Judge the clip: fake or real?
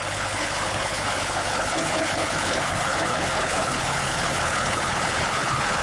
fake